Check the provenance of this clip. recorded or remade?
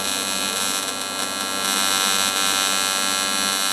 recorded